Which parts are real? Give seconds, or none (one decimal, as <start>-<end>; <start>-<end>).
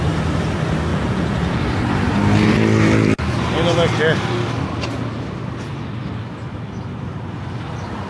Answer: 0.0-0.9; 1.6-8.1